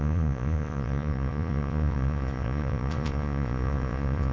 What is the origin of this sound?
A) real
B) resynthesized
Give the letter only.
B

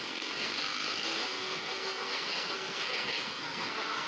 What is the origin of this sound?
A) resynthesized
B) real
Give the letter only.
A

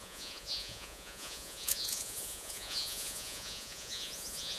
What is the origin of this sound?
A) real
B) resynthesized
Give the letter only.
B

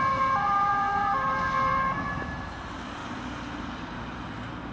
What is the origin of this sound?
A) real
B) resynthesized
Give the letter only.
B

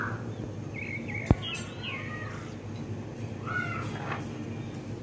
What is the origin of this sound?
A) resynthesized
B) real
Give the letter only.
B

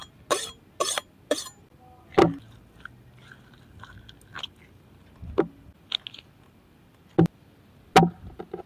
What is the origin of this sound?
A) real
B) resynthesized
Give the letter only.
A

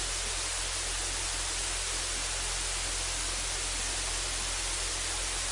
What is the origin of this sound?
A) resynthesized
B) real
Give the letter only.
B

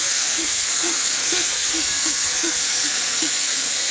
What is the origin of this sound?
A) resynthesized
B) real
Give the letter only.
A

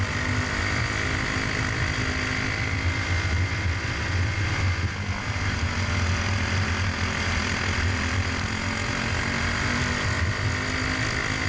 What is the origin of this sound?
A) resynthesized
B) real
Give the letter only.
B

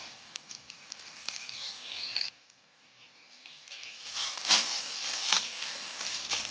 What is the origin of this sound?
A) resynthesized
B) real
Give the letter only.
A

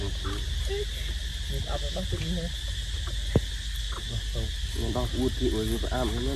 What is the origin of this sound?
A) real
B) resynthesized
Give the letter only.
A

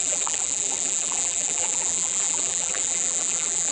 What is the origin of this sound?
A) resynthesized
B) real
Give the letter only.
A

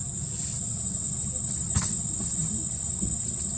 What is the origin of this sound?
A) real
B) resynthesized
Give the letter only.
A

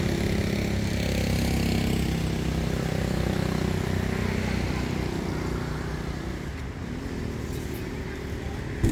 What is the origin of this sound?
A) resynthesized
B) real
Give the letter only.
B